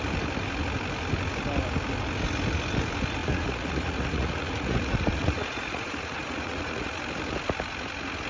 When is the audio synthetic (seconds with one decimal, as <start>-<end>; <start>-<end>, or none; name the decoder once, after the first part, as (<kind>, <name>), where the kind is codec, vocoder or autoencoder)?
3.2-7.0 (vocoder, Vocos)